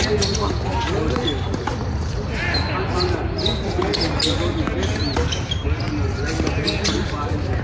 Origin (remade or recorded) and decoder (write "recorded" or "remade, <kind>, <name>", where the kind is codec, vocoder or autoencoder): recorded